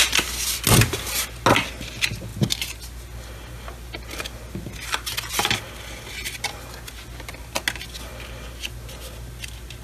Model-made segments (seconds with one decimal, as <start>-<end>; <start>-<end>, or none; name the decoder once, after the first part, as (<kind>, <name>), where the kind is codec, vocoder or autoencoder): none